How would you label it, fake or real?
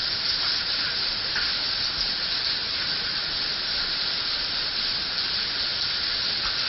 real